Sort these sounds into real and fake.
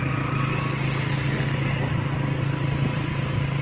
real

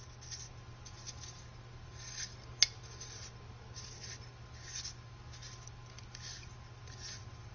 real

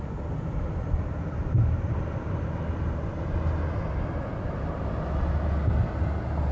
real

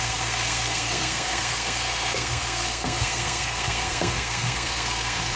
fake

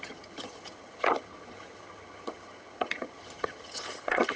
fake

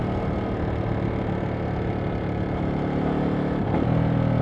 real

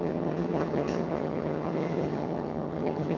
fake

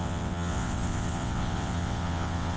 fake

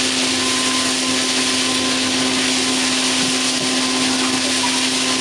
real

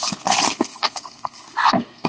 fake